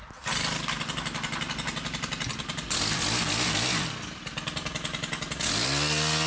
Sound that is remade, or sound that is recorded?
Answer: recorded